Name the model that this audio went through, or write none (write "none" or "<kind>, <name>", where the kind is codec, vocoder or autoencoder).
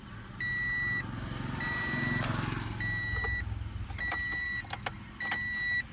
none